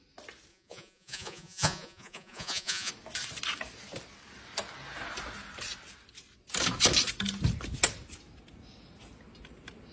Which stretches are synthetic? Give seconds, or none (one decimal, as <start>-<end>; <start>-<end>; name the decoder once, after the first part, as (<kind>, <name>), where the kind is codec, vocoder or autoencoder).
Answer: 0.5-2.9 (vocoder, Vocos)